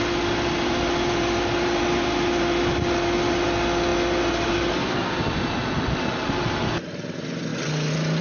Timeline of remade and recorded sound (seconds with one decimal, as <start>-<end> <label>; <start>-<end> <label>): 0.0-8.2 recorded

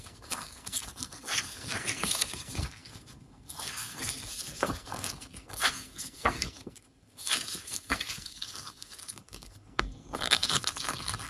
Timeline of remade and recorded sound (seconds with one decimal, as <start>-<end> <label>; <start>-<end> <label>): 0.0-11.3 remade